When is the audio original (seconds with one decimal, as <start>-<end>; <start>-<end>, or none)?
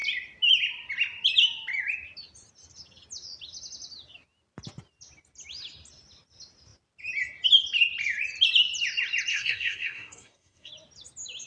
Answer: 0.0-9.3; 10.7-11.5